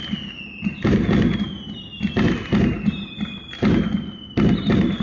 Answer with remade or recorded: recorded